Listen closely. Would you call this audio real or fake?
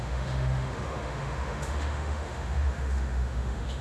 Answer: fake